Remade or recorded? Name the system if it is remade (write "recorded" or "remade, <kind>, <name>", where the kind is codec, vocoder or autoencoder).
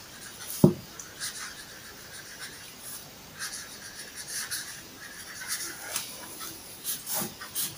remade, vocoder, BigVGAN v2